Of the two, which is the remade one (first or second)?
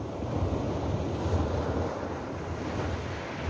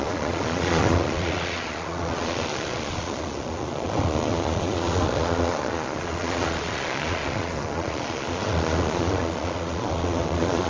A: second